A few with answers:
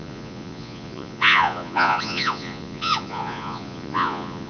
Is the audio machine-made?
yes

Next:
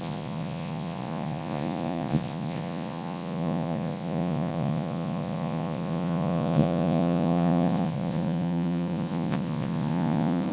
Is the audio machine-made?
yes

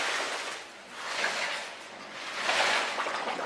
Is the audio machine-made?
yes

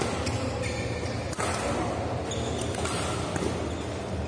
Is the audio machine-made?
no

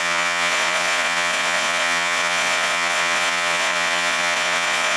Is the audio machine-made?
yes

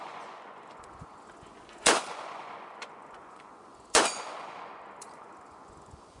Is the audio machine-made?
yes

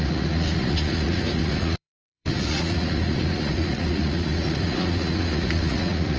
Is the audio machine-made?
yes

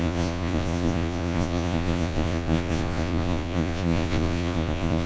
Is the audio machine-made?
yes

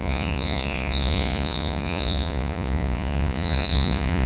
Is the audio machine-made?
yes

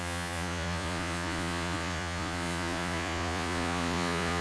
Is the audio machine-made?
yes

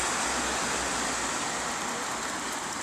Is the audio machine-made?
no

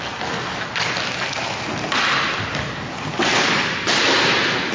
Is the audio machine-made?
no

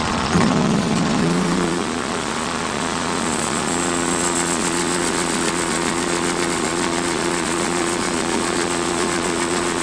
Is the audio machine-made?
yes